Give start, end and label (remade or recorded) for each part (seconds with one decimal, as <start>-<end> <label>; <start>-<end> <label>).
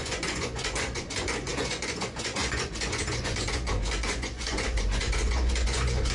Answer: 0.0-6.1 remade